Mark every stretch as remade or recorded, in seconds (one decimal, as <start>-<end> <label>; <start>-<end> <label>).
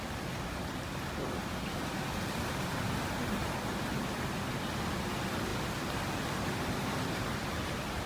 0.0-3.4 recorded; 3.4-4.0 remade; 4.0-8.1 recorded